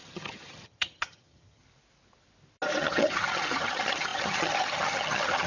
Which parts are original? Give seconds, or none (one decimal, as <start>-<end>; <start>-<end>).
1.6-2.8